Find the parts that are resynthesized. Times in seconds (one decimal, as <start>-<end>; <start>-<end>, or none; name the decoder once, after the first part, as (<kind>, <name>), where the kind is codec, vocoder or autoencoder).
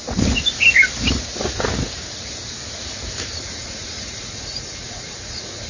3.4-5.7 (vocoder, Vocos)